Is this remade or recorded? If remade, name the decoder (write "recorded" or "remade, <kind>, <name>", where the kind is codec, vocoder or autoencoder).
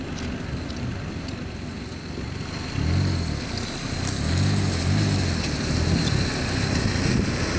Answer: recorded